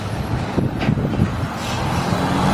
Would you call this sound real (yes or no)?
yes